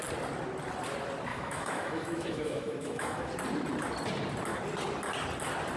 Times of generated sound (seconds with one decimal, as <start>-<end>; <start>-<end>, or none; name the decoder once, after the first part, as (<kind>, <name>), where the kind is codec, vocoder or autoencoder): 1.3-3.3 (autoencoder, DAC-VAE)